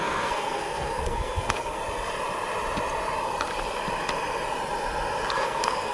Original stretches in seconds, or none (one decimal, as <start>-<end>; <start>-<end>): 1.8-5.3

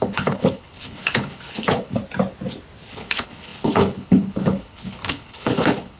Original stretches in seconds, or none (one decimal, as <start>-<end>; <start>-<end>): 2.0-2.9

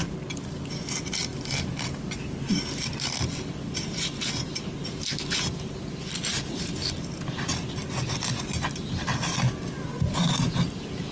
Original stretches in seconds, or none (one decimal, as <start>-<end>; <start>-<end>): 0.0-11.1

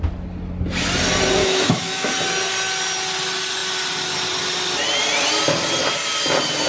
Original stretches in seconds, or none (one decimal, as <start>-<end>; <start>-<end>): 0.0-1.4; 2.1-6.7

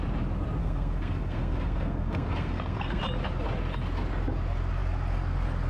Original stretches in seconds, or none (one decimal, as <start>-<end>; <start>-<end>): 0.0-0.6; 3.0-5.7

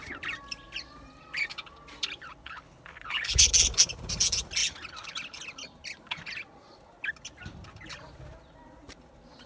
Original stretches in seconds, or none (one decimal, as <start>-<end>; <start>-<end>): 0.0-2.4; 3.5-9.5

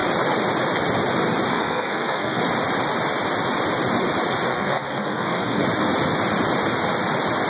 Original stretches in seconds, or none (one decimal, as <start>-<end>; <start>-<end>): 0.0-1.5; 2.4-4.5; 5.6-7.5

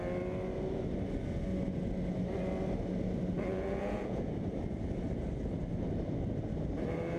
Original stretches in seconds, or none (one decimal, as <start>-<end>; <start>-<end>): 0.0-3.5; 4.3-7.2